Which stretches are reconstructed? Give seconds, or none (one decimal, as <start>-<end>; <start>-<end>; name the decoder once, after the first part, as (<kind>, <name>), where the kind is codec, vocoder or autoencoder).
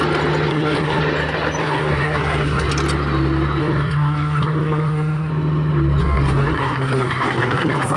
0.5-1.0 (codec, SNAC); 1.6-2.7; 3.6-5.3; 6.0-8.0